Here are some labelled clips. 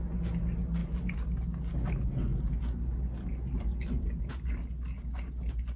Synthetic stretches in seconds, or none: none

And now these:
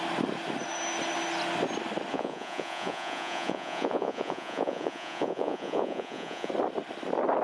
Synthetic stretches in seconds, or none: 2.1-6.5 (vocoder, Vocos)